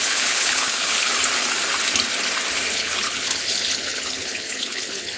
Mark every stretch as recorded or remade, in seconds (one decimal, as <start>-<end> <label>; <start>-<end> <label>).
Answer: 0.0-1.1 remade; 1.1-2.7 recorded; 2.7-5.2 remade